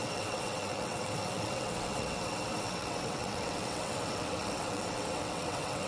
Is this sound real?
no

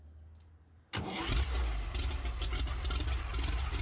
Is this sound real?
yes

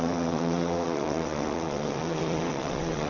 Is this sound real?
no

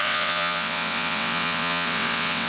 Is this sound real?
no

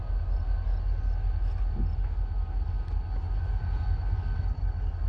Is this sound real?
yes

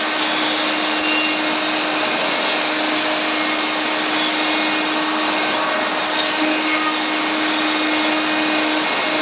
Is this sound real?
yes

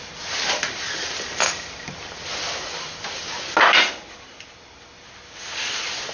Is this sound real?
yes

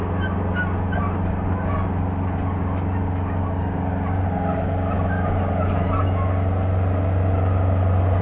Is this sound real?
yes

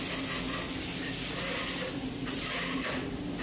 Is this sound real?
yes